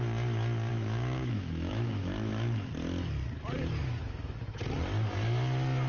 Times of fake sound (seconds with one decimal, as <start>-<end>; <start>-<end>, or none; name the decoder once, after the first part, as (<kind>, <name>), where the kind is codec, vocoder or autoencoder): 0.7-2.7 (autoencoder, DAC-VAE); 3.8-4.6